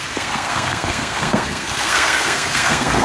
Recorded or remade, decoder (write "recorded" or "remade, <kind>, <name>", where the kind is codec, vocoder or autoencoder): remade, codec, SNAC